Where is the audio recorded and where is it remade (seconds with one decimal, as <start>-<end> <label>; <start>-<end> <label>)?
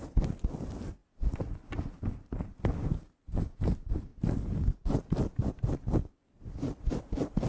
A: 0.0-4.1 recorded; 4.1-6.9 remade; 6.9-7.5 recorded